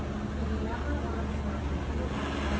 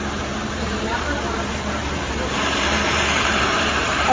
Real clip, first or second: first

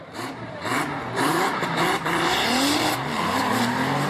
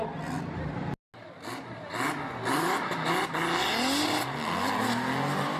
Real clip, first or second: second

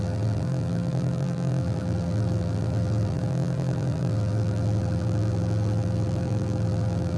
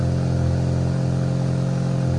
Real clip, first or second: second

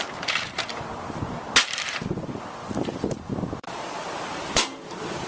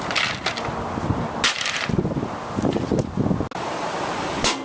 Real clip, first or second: second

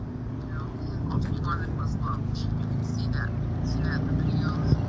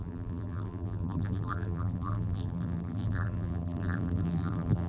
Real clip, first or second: first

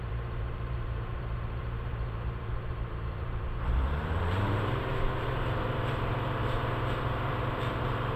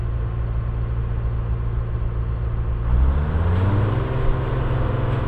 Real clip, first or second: second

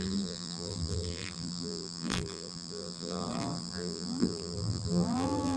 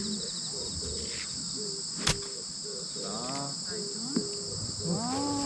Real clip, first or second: second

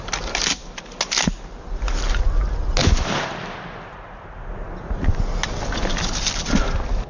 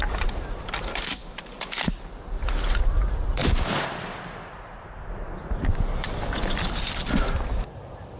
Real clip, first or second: first